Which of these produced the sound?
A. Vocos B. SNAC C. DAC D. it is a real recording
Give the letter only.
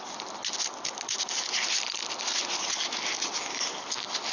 D